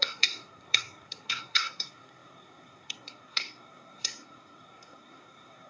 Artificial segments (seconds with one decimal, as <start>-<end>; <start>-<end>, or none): 0.0-5.7